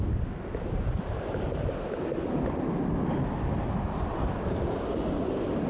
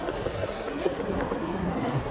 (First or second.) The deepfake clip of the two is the second